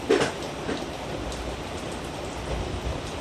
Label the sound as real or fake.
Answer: real